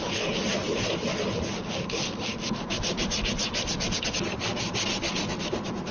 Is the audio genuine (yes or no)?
yes